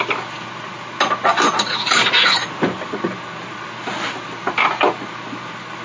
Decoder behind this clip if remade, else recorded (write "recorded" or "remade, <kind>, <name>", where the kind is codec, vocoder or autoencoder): recorded